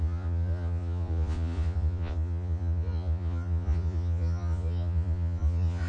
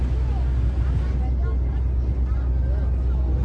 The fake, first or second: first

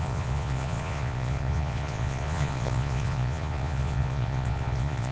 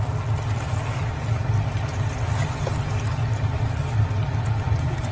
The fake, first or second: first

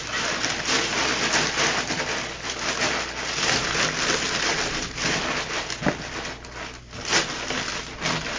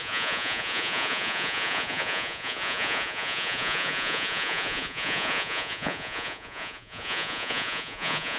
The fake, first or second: second